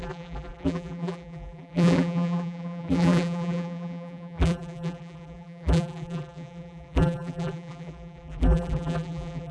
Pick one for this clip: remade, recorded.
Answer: remade